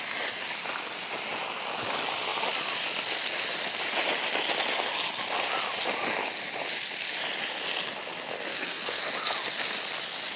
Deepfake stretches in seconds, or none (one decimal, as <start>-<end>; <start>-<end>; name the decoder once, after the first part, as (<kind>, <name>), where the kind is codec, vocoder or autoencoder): 8.5-9.1 (codec, SNAC)